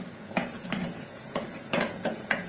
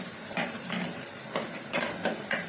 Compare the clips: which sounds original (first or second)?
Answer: second